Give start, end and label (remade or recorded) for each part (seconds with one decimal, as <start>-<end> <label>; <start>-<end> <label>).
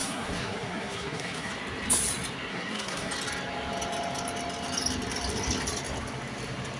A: 0.0-1.5 remade; 1.5-2.5 recorded; 2.5-3.1 remade; 3.1-6.8 recorded